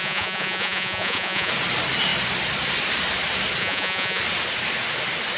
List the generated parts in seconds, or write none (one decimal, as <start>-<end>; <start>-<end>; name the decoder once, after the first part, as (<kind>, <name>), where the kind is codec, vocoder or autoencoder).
0.0-1.5 (vocoder, Vocos); 3.6-4.2